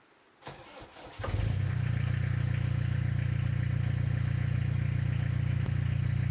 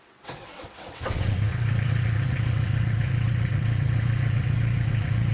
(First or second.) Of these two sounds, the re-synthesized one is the second